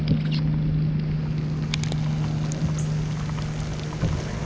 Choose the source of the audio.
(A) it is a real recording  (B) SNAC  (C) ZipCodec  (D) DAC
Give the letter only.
A